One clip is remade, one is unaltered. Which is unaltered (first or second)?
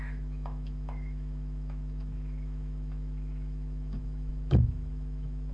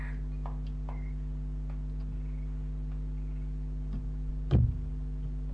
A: second